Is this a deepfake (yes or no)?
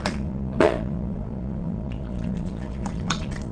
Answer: yes